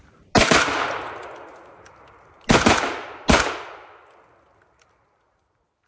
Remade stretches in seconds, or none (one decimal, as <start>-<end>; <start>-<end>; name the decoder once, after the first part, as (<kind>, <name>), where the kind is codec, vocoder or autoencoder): none